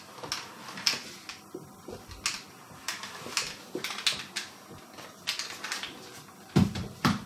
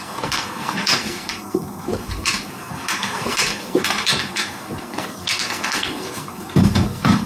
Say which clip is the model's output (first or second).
second